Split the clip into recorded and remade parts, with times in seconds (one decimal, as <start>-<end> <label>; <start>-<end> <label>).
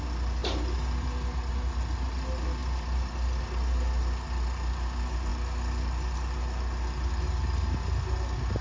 0.0-8.6 recorded